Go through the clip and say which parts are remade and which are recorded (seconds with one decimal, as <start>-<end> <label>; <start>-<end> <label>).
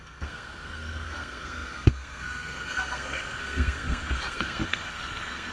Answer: 0.0-5.5 remade